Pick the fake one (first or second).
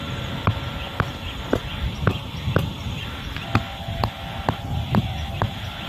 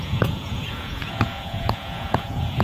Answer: second